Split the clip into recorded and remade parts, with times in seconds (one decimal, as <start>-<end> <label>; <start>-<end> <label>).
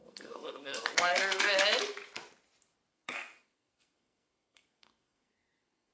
0.0-1.5 remade; 1.5-2.9 recorded; 2.9-5.9 remade